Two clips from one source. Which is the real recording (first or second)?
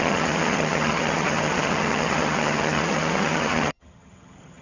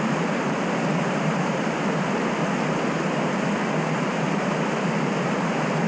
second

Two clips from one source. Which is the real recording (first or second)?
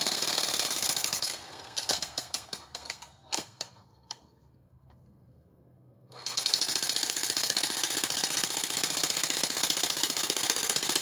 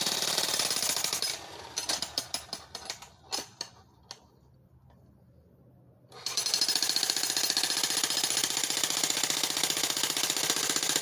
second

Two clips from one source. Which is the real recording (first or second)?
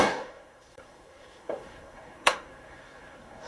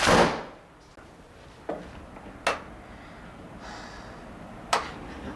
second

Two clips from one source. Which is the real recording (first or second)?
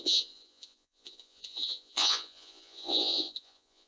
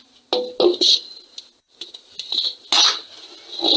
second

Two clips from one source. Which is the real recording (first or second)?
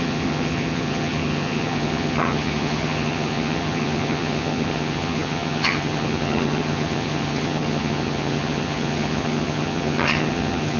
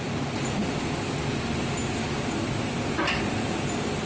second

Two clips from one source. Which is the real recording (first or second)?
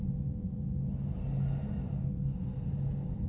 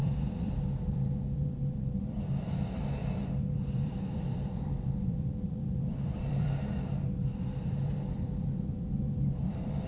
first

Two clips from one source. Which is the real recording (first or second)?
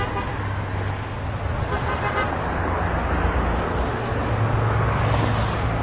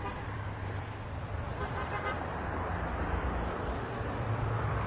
first